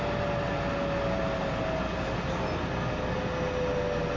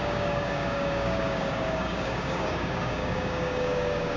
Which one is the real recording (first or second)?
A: first